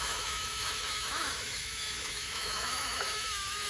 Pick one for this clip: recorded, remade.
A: remade